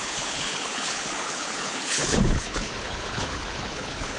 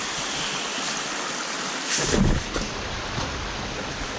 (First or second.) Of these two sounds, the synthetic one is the first